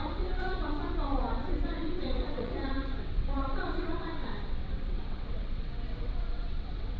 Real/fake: fake